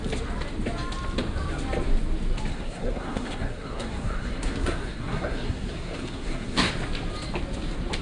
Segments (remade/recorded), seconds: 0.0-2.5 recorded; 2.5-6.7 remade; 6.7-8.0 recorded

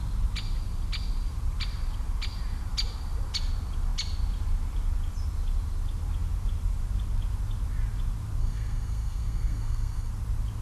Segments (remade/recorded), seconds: 0.0-8.4 recorded; 8.4-10.1 remade; 10.1-10.6 recorded

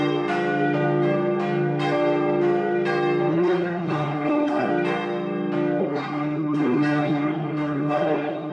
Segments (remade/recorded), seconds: 0.0-3.3 recorded; 3.3-4.7 remade; 4.7-5.8 recorded; 5.8-8.5 remade

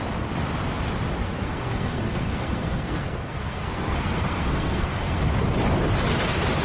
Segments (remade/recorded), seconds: 0.0-1.2 recorded; 1.2-5.2 remade; 5.2-6.6 recorded

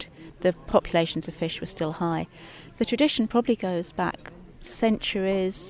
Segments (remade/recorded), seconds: 0.0-5.7 recorded

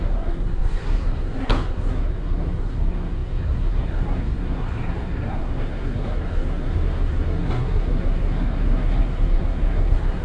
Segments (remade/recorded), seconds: 0.0-10.2 remade

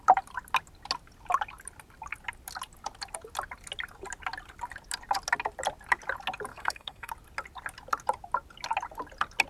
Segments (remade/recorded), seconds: 0.0-6.5 recorded; 6.5-7.1 remade; 7.1-9.5 recorded

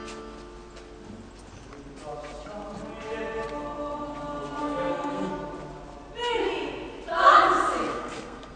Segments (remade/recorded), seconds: 0.0-4.6 recorded; 4.6-5.3 remade; 5.3-7.9 recorded; 7.9-8.6 remade